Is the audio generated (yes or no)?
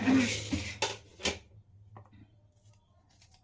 no